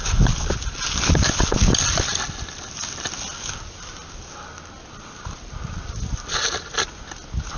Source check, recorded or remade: recorded